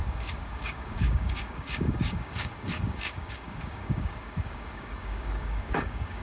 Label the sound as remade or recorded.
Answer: remade